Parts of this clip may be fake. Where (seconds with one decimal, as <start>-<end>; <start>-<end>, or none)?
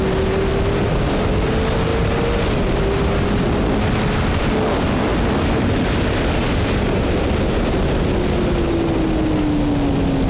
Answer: none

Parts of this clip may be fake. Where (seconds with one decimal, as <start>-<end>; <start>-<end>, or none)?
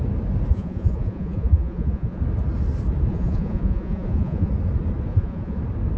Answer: 0.5-2.2; 3.1-4.5; 5.1-5.6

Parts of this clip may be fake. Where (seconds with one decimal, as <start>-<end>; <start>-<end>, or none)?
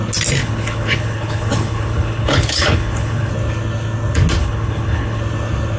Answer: 0.4-3.3; 4.4-5.2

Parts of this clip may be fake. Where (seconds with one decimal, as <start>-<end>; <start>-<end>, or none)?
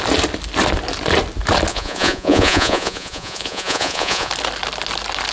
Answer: 1.7-4.3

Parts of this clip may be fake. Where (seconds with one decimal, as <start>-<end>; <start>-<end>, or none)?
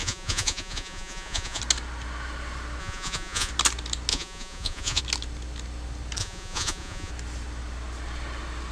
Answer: 0.0-1.6; 2.8-3.5; 4.1-5.0; 6.2-7.1